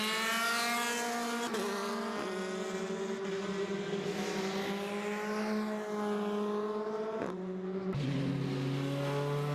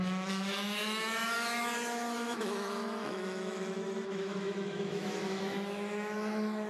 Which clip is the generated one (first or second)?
second